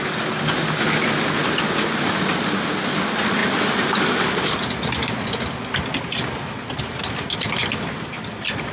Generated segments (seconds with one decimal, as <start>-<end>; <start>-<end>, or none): none